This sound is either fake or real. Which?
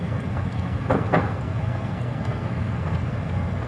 fake